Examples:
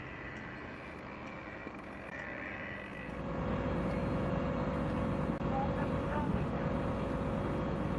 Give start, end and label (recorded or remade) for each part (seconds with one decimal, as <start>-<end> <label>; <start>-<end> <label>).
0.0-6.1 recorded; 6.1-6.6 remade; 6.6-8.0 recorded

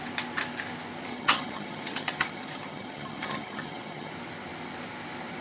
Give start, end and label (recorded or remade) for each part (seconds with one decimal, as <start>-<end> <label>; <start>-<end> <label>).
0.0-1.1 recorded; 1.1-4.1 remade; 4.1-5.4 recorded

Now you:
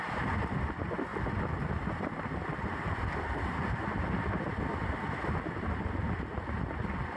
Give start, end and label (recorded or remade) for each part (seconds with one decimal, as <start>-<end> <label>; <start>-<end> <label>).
0.0-7.2 recorded